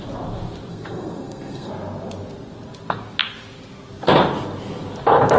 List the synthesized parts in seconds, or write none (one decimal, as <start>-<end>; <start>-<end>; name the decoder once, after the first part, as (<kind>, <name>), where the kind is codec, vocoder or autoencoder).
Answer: 0.7-1.7 (codec, SNAC)